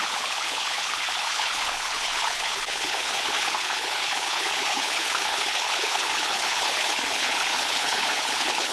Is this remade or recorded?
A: remade